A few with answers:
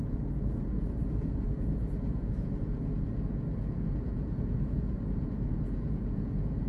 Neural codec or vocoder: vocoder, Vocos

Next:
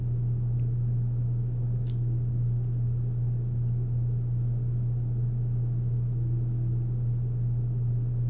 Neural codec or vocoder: none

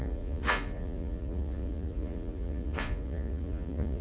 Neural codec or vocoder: vocoder, Vocos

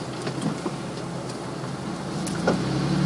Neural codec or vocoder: none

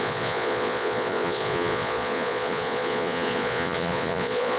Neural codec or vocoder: vocoder, Vocos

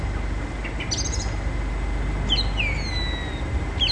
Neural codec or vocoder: none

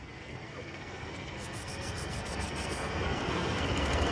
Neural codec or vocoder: codec, SNAC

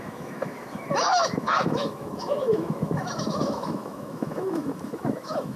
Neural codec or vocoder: autoencoder, DAC-VAE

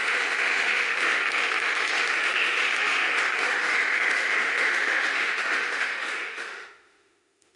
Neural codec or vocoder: autoencoder, DAC-VAE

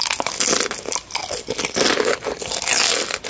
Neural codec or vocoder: none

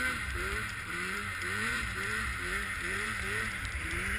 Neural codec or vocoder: vocoder, BigVGAN v2